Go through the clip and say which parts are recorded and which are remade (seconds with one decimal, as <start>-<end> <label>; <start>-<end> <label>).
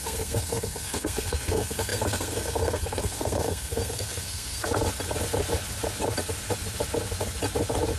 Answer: 0.0-4.6 remade; 4.6-8.0 recorded